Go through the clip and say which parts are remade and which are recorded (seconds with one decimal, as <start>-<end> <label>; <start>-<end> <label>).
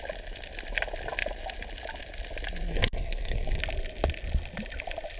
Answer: 0.0-2.7 recorded; 2.7-3.6 remade; 3.6-5.2 recorded